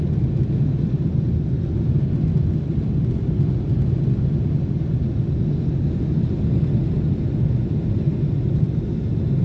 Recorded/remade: recorded